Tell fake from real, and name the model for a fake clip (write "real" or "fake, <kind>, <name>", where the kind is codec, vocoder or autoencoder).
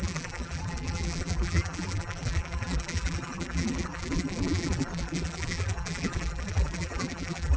fake, vocoder, BigVGAN v2